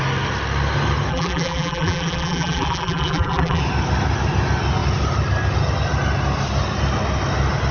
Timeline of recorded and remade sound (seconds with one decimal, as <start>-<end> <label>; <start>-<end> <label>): 0.0-1.1 recorded; 1.1-3.6 remade; 3.6-7.7 recorded